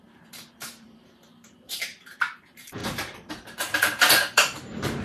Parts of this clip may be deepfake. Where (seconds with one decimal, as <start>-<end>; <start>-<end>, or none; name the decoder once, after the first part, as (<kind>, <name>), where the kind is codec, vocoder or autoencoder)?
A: 0.0-1.9 (vocoder, BigVGAN v2); 2.4-5.0